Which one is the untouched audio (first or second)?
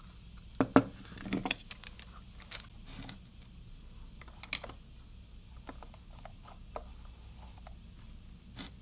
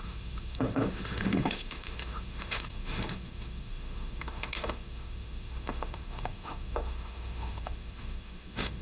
first